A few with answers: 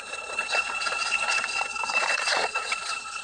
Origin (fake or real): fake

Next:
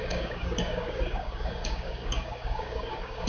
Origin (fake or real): fake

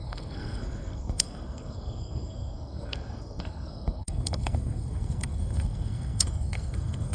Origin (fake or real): fake